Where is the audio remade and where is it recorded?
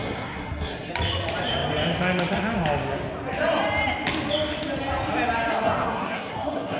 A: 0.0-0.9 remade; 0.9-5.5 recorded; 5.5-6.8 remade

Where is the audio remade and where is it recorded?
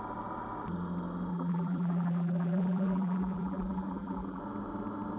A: 0.0-1.3 recorded; 1.3-4.4 remade; 4.4-5.2 recorded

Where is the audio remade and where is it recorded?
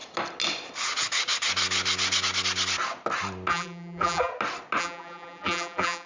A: 0.0-3.5 recorded; 3.5-4.3 remade; 4.3-4.8 recorded; 4.8-6.1 remade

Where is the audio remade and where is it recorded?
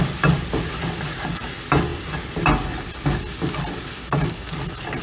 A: 0.0-5.0 recorded